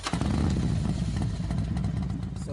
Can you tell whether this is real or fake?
real